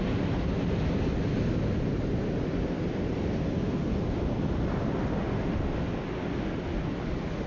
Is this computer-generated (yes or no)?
no